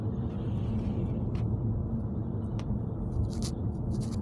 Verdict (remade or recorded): recorded